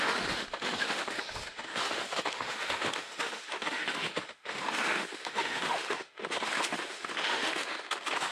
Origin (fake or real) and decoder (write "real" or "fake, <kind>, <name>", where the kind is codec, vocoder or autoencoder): fake, autoencoder, DAC-VAE